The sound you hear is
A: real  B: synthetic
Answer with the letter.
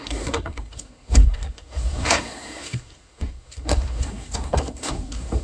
B